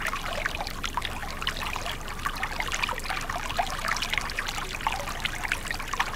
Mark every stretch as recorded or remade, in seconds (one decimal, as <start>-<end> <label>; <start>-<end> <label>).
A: 0.0-6.2 recorded